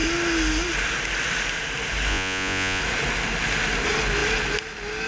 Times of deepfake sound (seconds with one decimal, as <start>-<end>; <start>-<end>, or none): 2.1-2.8